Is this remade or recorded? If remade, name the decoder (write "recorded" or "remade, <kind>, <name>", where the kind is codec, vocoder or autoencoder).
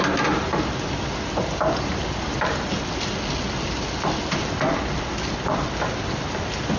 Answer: recorded